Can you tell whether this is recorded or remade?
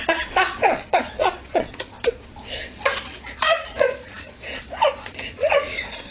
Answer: remade